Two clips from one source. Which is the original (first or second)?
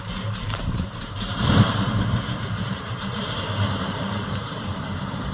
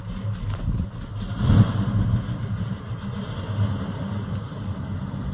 second